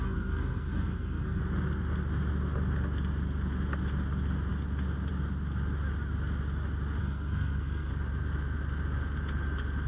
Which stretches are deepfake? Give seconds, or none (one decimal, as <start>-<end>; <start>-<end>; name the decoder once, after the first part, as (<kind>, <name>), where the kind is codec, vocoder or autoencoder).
0.0-1.4 (codec, SNAC); 7.0-7.9